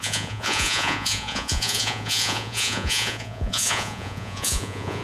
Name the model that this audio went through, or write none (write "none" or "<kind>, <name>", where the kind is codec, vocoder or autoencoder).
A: vocoder, Vocos